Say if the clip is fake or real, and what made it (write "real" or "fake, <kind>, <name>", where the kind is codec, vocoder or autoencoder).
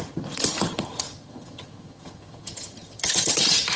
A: fake, vocoder, HiFi-GAN